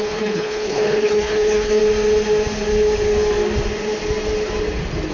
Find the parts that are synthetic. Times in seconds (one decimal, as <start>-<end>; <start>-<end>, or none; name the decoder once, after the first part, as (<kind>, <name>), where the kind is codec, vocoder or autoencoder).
0.0-1.8 (codec, HILCodec)